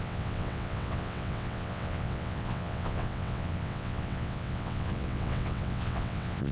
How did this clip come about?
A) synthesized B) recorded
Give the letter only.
A